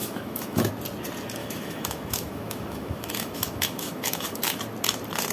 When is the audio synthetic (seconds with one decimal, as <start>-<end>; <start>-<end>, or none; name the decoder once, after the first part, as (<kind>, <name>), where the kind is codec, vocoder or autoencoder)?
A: 0.0-0.7 (autoencoder, DAC-VAE); 1.4-4.6